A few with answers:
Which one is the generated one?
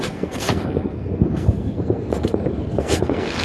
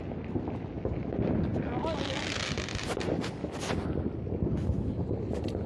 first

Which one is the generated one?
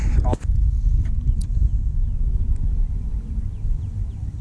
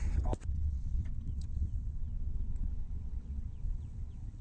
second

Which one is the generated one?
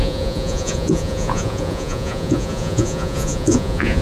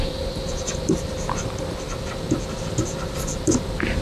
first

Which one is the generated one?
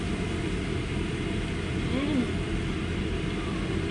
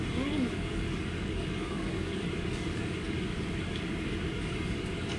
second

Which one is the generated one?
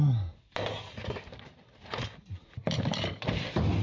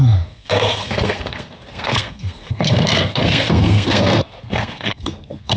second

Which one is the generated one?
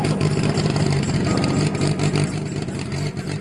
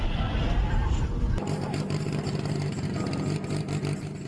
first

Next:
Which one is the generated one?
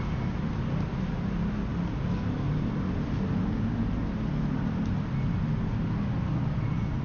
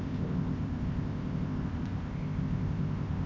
second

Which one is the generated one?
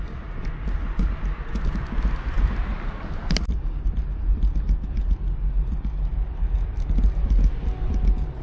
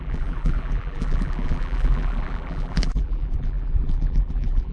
second